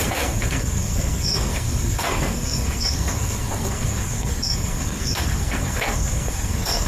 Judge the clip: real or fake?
fake